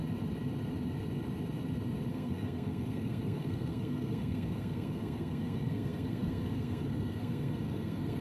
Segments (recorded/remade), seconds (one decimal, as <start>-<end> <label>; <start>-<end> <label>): 0.0-2.1 recorded; 2.1-8.2 remade